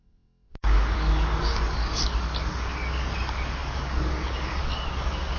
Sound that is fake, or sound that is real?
fake